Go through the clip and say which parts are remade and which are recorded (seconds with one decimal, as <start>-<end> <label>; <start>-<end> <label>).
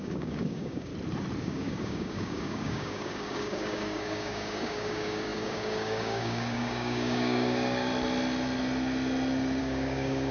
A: 0.0-0.9 remade; 0.9-1.4 recorded; 1.4-7.9 remade; 7.9-9.6 recorded; 9.6-10.3 remade